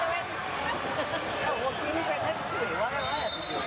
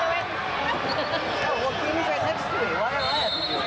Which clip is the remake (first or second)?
first